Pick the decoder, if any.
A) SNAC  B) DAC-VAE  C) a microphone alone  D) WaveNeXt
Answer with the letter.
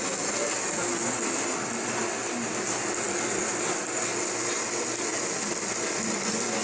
C